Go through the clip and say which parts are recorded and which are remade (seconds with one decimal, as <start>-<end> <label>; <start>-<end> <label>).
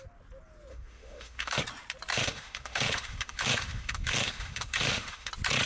0.0-0.7 recorded; 0.7-1.6 remade; 1.6-2.1 recorded; 2.1-5.3 remade; 5.3-5.7 recorded